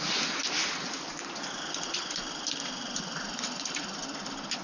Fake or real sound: real